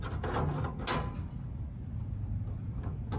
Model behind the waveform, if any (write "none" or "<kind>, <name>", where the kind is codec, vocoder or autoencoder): none